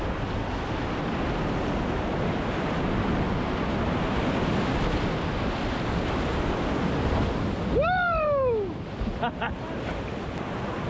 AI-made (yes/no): no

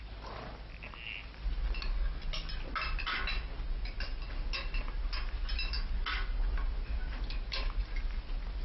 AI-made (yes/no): no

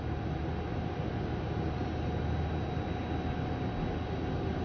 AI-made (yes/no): no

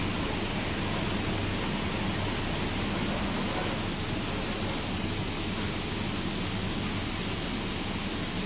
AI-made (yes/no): no